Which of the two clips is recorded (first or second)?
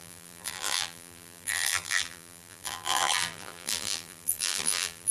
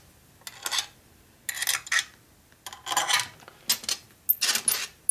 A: second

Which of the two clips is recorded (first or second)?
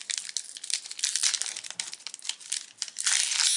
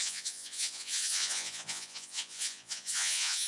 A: first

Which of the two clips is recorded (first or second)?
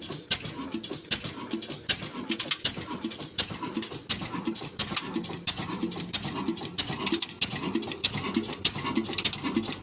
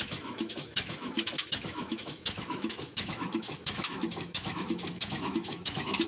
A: first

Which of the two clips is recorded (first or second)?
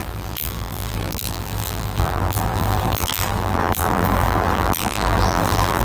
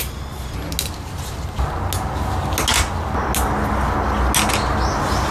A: second